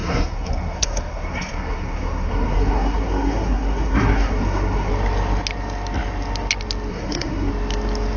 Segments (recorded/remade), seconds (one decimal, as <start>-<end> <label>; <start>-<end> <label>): 0.0-4.9 remade; 4.9-6.9 recorded; 6.9-7.5 remade; 7.5-8.2 recorded